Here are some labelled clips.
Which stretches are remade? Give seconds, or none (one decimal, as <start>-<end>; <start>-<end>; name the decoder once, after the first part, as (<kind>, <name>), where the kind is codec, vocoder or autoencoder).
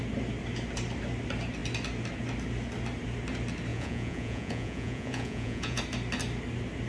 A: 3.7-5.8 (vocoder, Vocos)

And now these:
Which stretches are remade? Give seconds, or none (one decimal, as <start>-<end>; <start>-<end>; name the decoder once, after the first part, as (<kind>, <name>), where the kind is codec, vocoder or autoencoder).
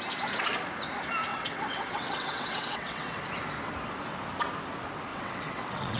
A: 1.3-3.2 (vocoder, WaveNeXt); 5.1-6.0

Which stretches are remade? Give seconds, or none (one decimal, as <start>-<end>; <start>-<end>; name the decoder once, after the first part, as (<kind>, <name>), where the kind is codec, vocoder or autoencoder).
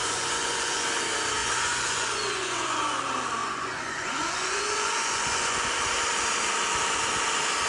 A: 0.0-0.9 (vocoder, Vocos); 1.4-3.0; 3.4-5.7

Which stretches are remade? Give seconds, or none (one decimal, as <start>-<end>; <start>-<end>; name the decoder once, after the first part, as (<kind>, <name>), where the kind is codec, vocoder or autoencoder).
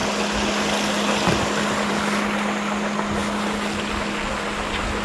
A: none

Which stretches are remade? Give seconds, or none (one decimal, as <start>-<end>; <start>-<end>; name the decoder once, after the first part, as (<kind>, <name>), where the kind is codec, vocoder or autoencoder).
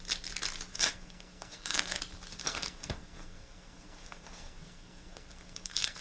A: 0.7-2.0 (codec, SNAC); 2.4-6.0